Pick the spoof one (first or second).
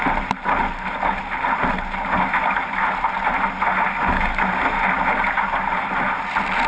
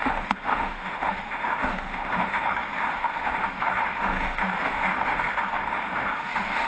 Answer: second